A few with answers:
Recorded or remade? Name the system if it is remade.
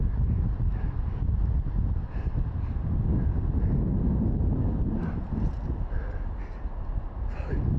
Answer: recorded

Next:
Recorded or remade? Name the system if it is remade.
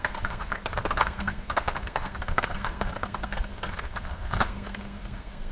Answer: remade, codec, SNAC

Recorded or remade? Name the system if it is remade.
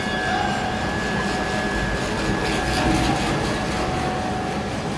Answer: recorded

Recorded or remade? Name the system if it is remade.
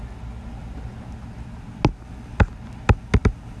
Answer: recorded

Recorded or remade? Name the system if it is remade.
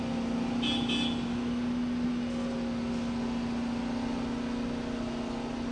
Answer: recorded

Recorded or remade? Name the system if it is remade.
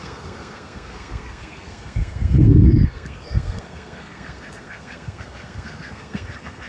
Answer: remade, codec, SNAC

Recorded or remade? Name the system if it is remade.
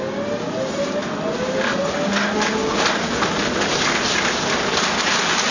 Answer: recorded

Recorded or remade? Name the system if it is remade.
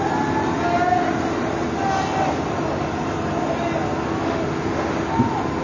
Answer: recorded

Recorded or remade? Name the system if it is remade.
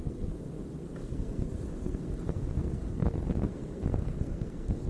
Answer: remade, codec, SNAC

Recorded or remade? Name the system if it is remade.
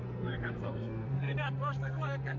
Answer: remade, codec, SNAC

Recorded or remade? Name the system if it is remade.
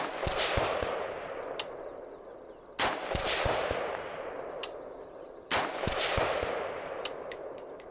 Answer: recorded